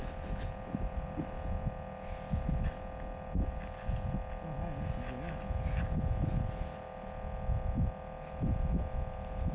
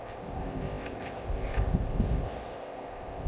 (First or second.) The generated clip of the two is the second